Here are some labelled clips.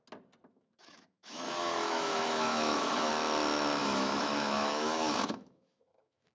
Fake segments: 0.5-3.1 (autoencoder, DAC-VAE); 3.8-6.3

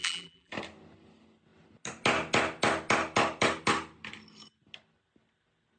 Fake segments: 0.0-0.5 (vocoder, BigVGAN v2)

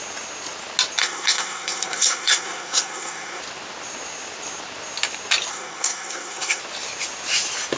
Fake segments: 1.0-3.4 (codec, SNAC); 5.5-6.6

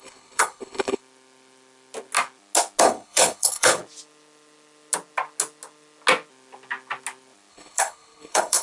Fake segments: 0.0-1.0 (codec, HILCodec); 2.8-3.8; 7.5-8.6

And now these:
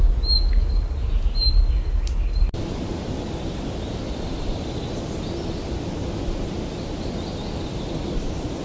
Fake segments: none